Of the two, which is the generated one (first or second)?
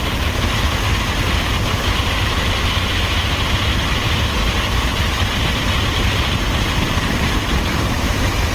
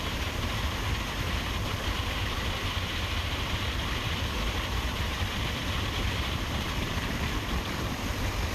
second